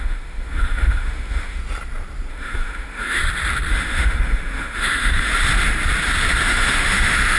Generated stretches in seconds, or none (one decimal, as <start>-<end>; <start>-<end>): 0.0-1.6; 2.3-3.2; 3.7-5.3; 6.3-7.4